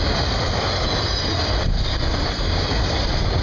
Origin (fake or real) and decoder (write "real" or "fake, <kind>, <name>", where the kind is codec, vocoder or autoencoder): real